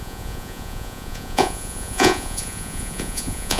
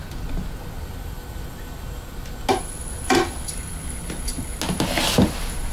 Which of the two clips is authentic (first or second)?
second